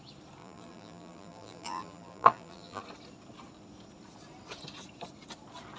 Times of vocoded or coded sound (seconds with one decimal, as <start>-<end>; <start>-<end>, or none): 0.4-2.8